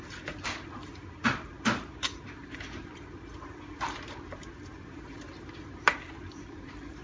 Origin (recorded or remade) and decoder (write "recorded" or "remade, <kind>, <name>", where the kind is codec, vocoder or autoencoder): remade, vocoder, BigVGAN v2